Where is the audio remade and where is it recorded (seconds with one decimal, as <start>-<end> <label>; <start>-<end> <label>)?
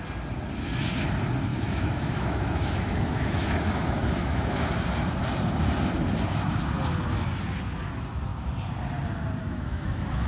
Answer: 0.0-1.5 recorded; 1.5-4.7 remade; 4.7-9.4 recorded; 9.4-10.3 remade